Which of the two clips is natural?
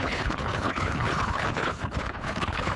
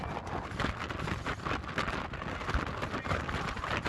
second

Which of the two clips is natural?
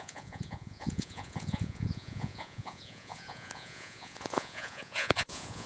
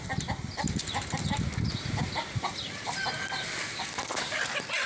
second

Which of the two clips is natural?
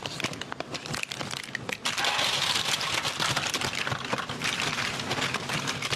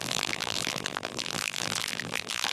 first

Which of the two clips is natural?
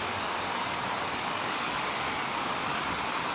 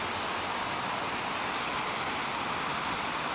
second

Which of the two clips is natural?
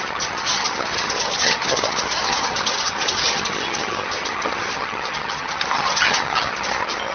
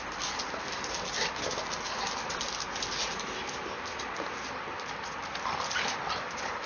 second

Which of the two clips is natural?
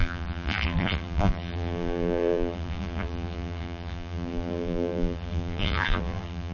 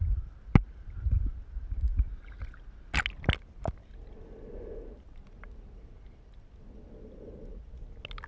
second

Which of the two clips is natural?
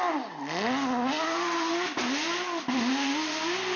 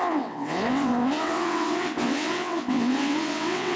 first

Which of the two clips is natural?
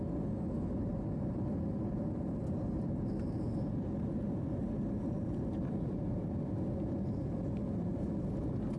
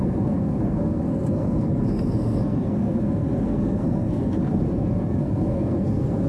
first